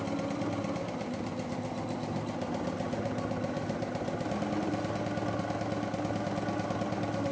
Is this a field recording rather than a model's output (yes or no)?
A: yes